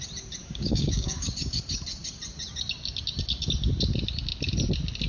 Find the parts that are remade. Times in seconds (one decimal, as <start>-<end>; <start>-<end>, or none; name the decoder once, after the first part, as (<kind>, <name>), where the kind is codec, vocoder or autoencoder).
0.4-1.6 (codec, DAC)